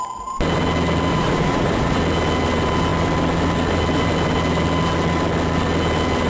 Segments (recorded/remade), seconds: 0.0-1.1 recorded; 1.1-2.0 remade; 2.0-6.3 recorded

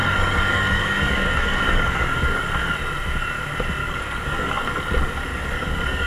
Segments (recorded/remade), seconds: 0.0-2.5 remade; 2.5-3.8 recorded; 3.8-4.8 remade; 4.8-5.3 recorded; 5.3-6.1 remade

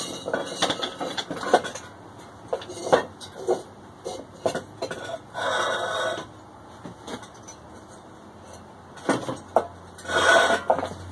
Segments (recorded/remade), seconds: 0.0-2.8 recorded; 2.8-4.6 remade; 4.6-11.1 recorded

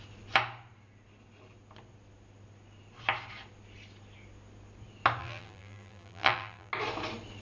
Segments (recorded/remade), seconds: 0.0-5.2 recorded; 5.2-6.7 remade; 6.7-7.4 recorded